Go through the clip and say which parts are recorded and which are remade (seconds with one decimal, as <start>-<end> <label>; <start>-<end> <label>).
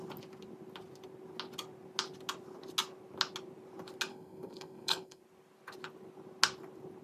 0.0-4.1 recorded; 4.1-5.2 remade; 5.2-7.0 recorded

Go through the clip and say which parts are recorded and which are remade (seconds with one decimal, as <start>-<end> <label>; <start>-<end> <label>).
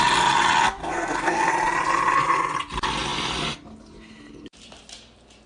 0.0-0.8 recorded; 0.8-1.5 remade; 1.5-5.5 recorded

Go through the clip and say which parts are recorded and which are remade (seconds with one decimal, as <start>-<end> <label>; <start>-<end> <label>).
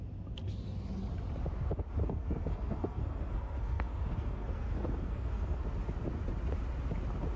0.0-2.0 recorded; 2.0-5.6 remade; 5.6-7.4 recorded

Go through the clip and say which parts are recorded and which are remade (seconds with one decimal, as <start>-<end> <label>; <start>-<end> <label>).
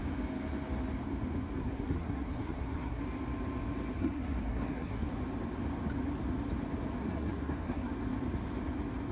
0.0-1.6 recorded; 1.6-3.0 remade; 3.0-4.0 recorded; 4.0-5.1 remade; 5.1-7.0 recorded; 7.0-7.9 remade; 7.9-9.1 recorded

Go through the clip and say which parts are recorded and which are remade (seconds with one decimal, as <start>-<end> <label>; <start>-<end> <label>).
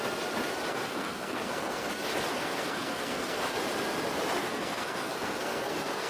0.0-0.7 recorded; 0.7-1.9 remade; 1.9-2.3 recorded; 2.3-3.4 remade; 3.4-4.4 recorded; 4.4-6.1 remade